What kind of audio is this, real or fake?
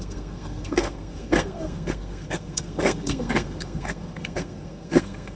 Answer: fake